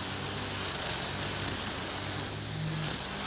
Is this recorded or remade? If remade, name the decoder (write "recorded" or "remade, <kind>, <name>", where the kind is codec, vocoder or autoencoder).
recorded